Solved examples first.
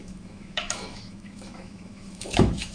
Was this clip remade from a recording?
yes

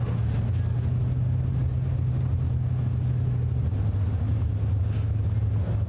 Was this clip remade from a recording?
no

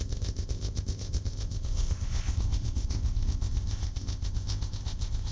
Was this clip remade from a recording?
yes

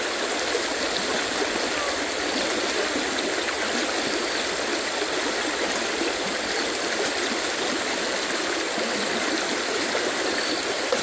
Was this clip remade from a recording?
no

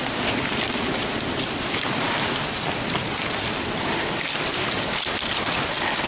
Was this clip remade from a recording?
no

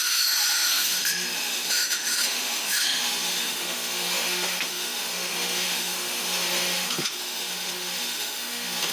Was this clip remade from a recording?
yes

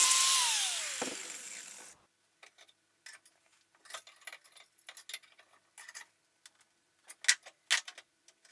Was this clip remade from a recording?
no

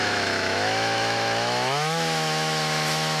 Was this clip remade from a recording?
yes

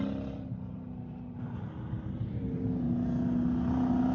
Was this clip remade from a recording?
no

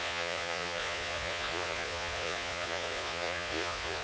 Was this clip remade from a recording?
yes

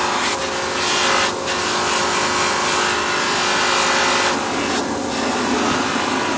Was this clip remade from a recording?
no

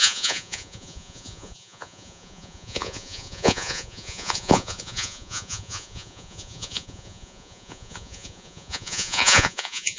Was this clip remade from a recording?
yes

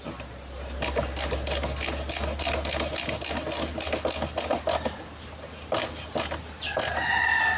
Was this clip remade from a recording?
no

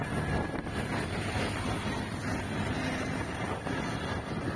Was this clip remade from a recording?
no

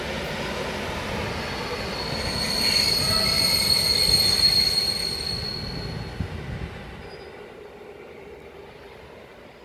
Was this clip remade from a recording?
no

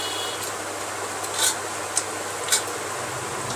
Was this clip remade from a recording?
no